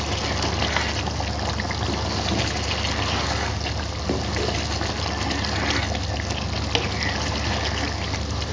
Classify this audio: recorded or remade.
recorded